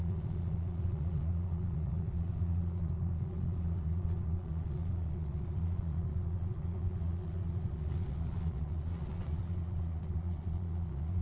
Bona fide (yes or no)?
no